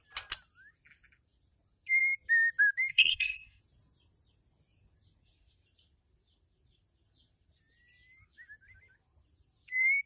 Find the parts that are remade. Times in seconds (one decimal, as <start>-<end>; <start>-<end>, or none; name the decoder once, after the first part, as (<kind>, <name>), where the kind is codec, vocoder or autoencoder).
2.9-3.6 (codec, SNAC)